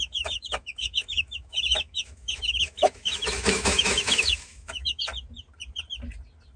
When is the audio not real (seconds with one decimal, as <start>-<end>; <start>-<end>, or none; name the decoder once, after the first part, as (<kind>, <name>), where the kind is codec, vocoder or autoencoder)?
0.0-5.1 (autoencoder, DAC-VAE)